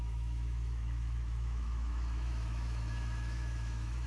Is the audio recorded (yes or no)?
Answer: no